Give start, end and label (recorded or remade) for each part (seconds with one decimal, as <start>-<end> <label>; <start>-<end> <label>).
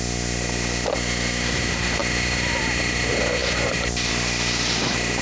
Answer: 0.0-3.4 recorded; 3.4-4.1 remade; 4.1-5.2 recorded